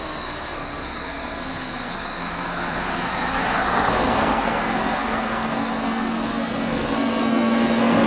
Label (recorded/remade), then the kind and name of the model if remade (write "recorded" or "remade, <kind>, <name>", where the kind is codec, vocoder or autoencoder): remade, codec, SNAC